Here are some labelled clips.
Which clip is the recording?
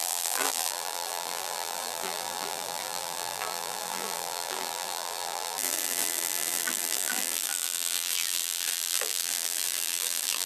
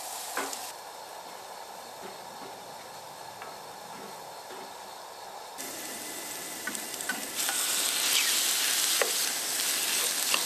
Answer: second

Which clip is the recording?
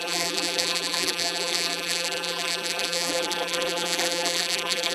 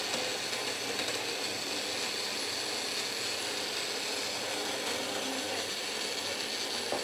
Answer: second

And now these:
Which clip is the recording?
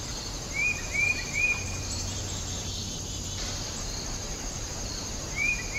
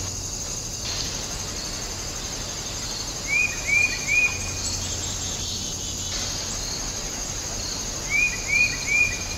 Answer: second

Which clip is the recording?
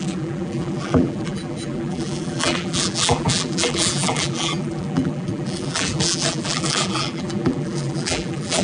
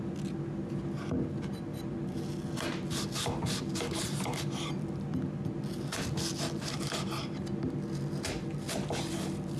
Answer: second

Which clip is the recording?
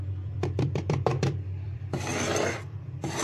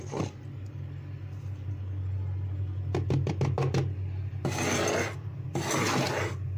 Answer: second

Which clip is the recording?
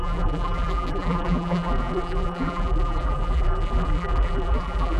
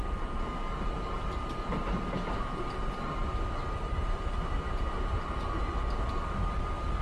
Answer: second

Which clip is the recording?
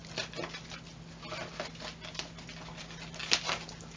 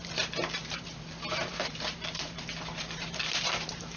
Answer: first